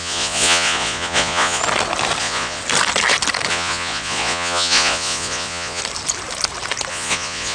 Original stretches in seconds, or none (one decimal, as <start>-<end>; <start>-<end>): 1.6-2.2; 2.6-3.5; 5.8-6.9